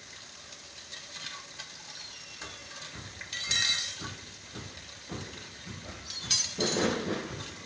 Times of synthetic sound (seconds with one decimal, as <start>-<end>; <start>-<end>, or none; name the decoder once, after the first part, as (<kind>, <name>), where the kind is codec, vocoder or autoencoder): 0.9-1.6 (vocoder, BigVGAN v2); 2.6-7.2